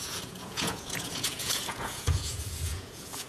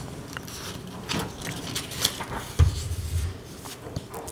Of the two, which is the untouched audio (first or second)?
second